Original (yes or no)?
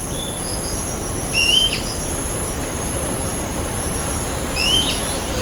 no